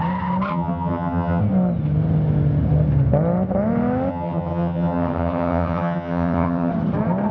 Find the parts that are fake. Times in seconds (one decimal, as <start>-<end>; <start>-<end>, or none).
0.5-1.4; 4.1-6.7